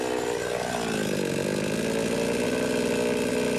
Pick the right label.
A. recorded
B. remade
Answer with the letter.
A